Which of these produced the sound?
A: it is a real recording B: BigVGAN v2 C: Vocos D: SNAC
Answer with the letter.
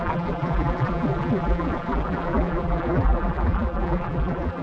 B